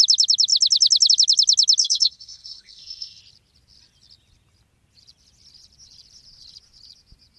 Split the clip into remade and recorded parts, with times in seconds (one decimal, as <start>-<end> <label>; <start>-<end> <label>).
0.0-1.8 recorded; 1.8-3.2 remade; 3.2-7.4 recorded